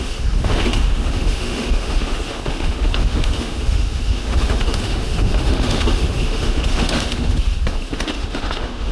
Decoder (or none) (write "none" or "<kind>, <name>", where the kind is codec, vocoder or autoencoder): autoencoder, DAC-VAE